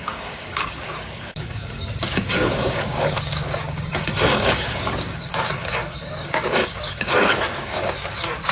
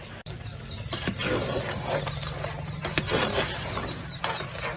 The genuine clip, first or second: second